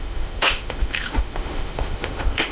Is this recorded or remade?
remade